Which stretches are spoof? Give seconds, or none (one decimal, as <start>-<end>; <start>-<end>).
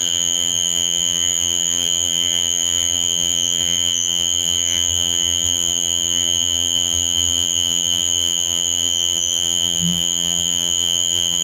0.0-11.4